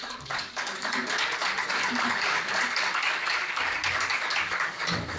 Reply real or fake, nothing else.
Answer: fake